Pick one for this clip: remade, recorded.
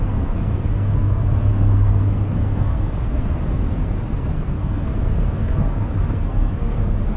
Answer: remade